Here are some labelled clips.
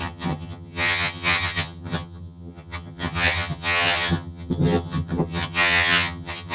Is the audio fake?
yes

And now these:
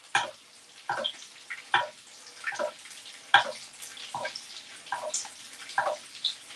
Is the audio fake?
no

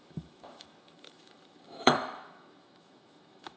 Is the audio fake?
yes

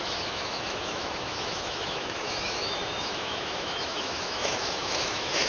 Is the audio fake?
yes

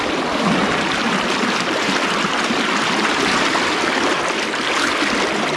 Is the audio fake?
no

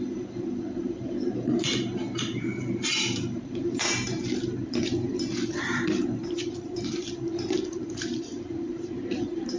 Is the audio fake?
yes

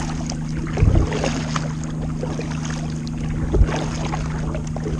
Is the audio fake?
no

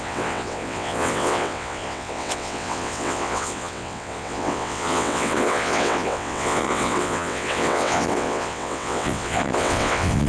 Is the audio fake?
yes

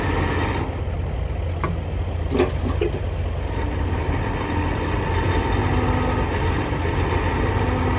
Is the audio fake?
no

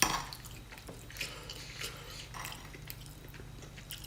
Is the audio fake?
no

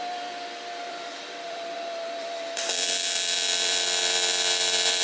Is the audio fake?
yes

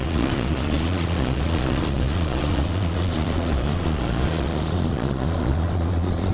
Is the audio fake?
yes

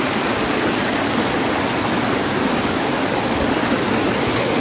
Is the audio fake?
no